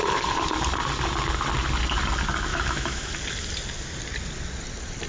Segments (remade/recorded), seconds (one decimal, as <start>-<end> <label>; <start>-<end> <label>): 0.0-2.5 recorded; 2.5-3.1 remade; 3.1-5.1 recorded

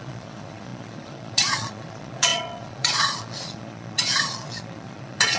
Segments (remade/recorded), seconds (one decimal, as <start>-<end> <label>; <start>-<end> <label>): 0.0-5.4 remade

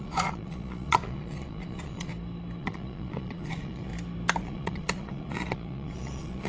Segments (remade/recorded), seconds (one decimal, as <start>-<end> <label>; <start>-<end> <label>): 0.0-2.1 remade; 2.1-2.6 recorded; 2.6-3.9 remade; 3.9-4.4 recorded; 4.4-6.5 remade

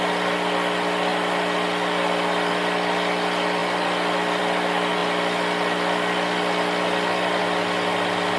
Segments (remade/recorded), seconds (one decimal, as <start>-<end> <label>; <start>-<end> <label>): 0.0-8.4 recorded

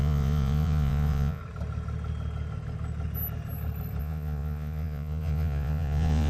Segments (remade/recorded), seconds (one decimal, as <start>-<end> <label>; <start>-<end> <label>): 0.0-1.4 remade; 1.4-4.0 recorded; 4.0-6.3 remade

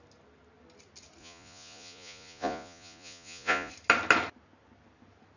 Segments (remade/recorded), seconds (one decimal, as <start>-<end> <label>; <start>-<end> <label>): 0.0-1.2 recorded; 1.2-3.7 remade; 3.7-5.4 recorded